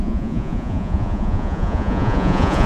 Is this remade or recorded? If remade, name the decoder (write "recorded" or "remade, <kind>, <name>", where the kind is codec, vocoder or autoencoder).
remade, vocoder, Vocos